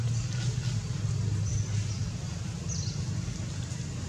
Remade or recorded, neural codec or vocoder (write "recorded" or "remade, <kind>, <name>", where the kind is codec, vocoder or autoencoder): recorded